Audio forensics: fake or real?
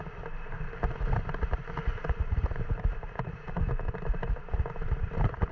real